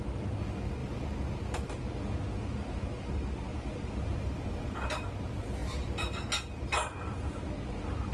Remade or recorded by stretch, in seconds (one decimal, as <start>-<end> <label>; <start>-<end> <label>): 0.0-3.5 recorded; 3.5-4.8 remade; 4.8-8.1 recorded